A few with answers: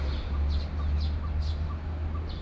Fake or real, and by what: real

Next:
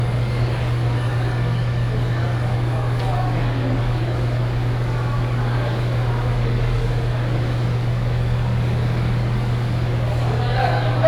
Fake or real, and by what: fake, codec, DAC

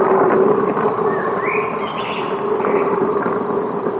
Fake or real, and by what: real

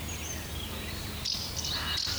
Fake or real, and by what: real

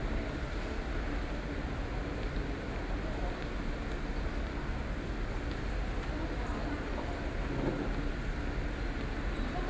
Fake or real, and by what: real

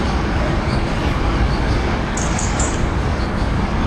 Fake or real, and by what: fake, codec, DAC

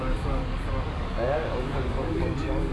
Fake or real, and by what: fake, codec, DAC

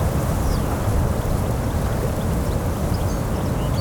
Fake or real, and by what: real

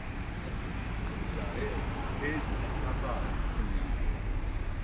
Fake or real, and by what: real